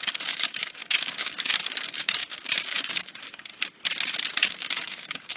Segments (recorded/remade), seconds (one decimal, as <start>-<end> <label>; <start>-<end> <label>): 0.0-3.5 remade; 3.5-4.4 recorded; 4.4-5.4 remade